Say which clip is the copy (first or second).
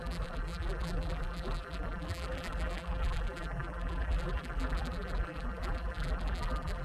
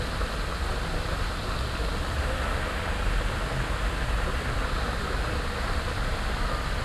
first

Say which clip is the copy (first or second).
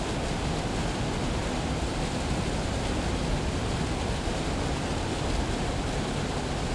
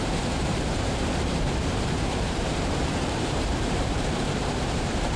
second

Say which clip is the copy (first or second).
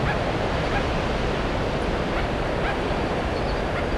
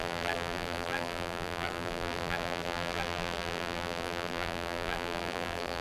second